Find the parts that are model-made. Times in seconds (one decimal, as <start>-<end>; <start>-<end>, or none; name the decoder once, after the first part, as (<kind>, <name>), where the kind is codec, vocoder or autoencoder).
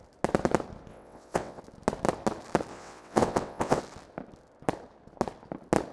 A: 0.9-1.6 (vocoder, WaveNeXt); 2.7-3.8